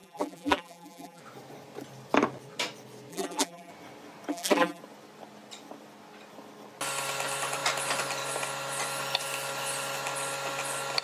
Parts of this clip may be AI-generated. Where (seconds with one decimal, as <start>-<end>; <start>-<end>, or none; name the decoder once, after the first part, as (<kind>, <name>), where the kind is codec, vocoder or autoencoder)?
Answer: 0.0-1.2 (vocoder, BigVGAN v2); 3.1-3.7; 4.3-4.8